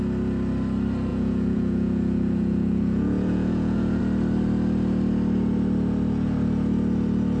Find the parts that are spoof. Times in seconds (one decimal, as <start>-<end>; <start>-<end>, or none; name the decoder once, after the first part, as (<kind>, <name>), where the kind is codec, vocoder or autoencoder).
1.1-4.0 (vocoder, Vocos)